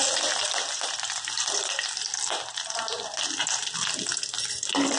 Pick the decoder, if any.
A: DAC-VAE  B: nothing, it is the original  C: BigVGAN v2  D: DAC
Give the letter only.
B